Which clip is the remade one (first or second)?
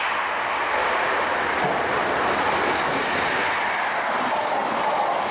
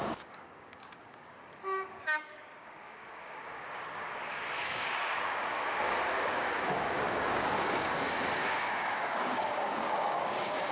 second